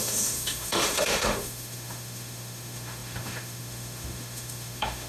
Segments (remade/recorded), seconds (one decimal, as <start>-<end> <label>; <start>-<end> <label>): 0.0-5.1 remade